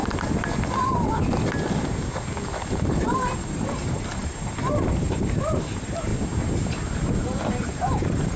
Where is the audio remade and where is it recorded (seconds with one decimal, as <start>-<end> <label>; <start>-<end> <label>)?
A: 0.0-2.8 recorded; 2.8-6.1 remade; 6.1-7.2 recorded; 7.2-8.4 remade